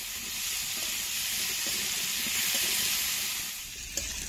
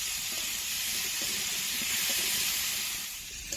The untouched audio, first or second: first